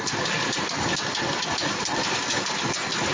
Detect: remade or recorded recorded